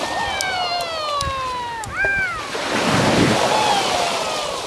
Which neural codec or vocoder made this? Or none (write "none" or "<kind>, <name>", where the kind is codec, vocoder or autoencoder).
none